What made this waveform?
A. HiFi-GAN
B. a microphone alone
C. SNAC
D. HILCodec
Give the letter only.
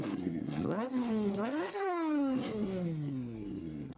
C